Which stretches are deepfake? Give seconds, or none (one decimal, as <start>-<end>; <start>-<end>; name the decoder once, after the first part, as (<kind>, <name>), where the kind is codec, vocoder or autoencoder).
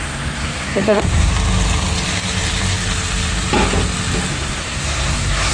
0.0-1.3 (codec, SNAC); 4.3-5.5